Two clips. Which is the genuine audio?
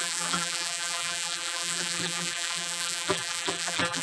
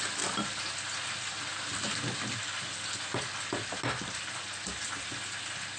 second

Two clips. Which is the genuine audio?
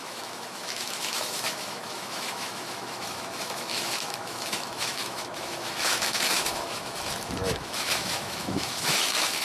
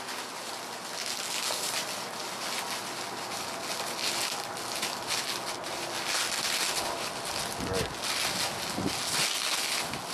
second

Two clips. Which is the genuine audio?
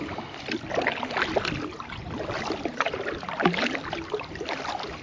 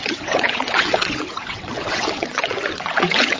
first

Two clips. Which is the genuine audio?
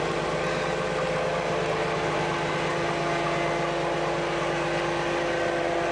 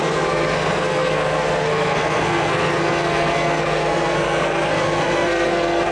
first